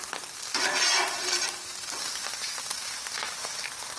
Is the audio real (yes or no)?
no